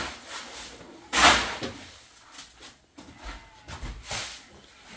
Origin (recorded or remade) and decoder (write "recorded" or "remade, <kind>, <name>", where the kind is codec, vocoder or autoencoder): recorded